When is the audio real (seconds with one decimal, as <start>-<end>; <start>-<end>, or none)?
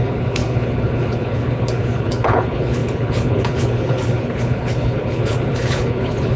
none